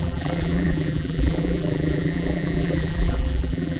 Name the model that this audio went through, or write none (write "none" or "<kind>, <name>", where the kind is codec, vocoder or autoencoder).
vocoder, BigVGAN v2